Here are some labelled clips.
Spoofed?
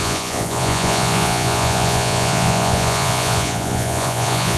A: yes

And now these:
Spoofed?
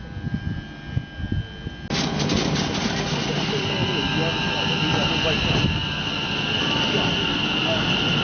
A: no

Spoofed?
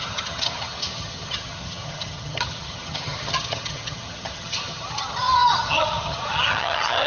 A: yes